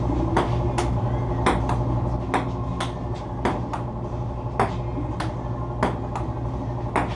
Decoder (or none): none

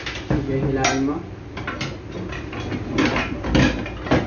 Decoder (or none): none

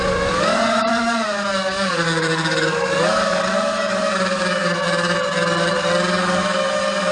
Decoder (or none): codec, DAC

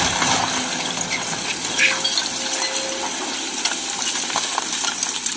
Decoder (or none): none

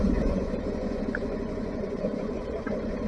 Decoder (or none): vocoder, Vocos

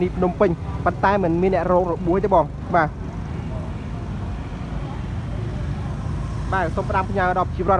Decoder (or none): none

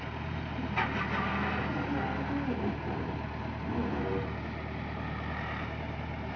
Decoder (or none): none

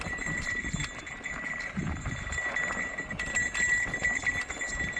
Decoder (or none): none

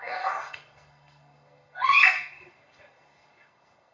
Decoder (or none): codec, SNAC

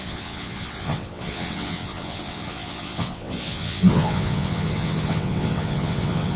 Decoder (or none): vocoder, WaveNeXt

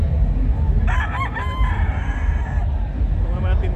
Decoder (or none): none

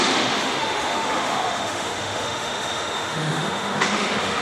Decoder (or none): autoencoder, DAC-VAE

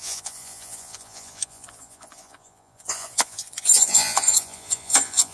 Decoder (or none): vocoder, Vocos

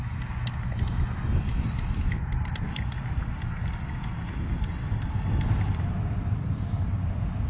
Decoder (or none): none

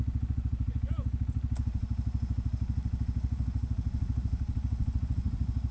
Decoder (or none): vocoder, BigVGAN v2